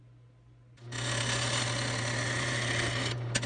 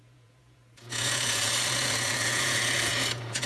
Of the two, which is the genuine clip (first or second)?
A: first